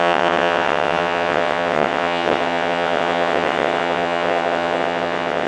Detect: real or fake fake